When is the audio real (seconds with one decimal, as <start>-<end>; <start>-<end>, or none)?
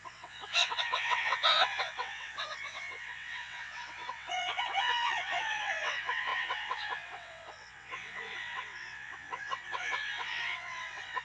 none